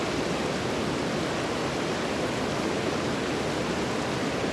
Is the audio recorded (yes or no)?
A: yes